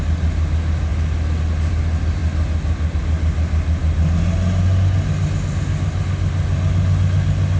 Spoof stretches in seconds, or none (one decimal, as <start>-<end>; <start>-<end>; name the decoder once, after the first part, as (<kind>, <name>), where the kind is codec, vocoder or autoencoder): none

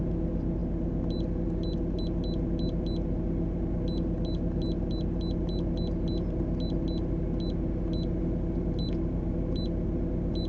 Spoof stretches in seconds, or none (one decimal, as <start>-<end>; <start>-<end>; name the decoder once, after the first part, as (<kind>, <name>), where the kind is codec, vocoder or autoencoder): none